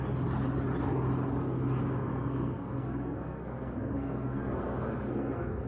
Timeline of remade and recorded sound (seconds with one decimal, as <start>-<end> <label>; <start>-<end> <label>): 0.0-2.0 recorded; 2.0-5.7 remade